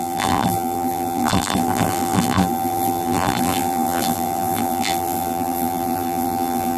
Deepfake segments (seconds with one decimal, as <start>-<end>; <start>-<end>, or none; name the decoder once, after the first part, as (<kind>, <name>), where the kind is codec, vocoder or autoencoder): 0.0-6.8 (vocoder, BigVGAN v2)